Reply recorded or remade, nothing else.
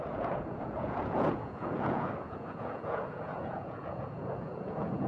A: remade